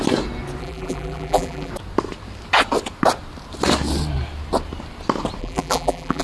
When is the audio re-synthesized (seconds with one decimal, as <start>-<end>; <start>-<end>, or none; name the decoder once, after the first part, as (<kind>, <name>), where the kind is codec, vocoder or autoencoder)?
0.6-1.7 (vocoder, BigVGAN v2); 5.4-6.2